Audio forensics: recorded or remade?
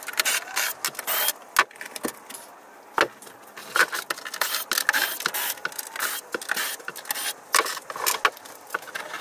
recorded